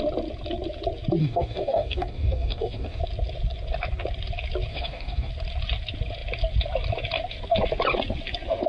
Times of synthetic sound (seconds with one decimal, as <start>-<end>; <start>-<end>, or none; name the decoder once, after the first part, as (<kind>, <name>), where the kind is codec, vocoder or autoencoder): 1.2-3.0 (codec, DAC); 4.7-5.3